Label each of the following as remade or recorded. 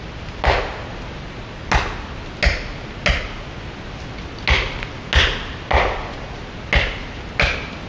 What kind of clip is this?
recorded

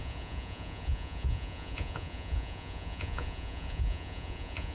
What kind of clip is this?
remade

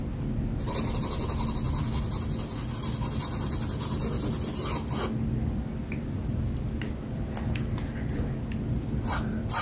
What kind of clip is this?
recorded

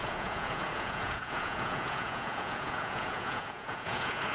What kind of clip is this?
remade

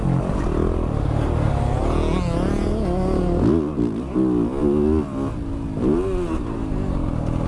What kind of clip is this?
recorded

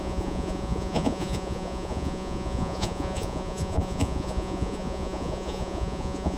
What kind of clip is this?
remade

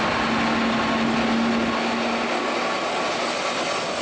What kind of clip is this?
recorded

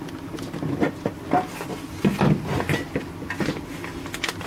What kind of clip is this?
recorded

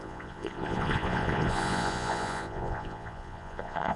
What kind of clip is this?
remade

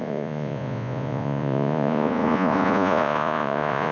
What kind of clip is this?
remade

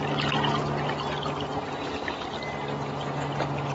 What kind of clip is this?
recorded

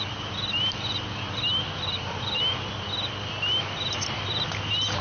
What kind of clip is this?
recorded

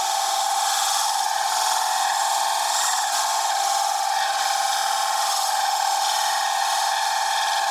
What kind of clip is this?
recorded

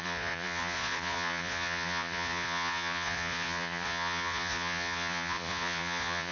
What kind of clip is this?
remade